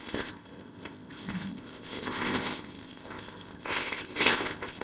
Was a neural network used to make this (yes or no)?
yes